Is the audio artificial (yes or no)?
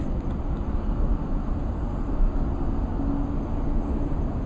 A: no